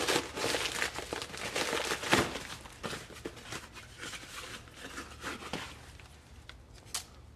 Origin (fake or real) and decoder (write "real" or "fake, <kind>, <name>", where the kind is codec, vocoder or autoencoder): real